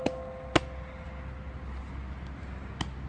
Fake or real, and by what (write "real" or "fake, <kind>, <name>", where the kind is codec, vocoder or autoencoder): real